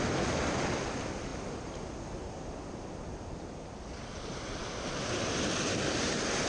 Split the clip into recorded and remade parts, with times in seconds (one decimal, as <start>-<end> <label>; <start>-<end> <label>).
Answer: 0.0-6.5 recorded